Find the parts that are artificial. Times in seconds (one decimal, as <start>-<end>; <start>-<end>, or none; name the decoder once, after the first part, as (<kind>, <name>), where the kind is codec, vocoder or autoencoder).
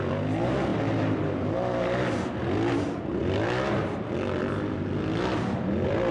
none